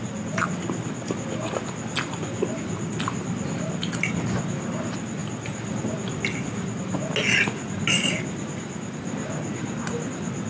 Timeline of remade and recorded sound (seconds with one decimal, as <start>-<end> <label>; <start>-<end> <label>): 0.0-10.5 recorded